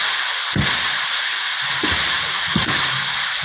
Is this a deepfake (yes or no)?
no